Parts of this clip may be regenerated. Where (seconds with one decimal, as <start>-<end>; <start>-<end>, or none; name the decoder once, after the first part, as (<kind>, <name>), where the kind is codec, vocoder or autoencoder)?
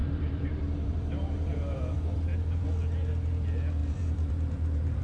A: 0.0-1.8 (vocoder, BigVGAN v2); 3.8-5.0